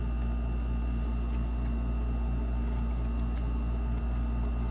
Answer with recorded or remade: recorded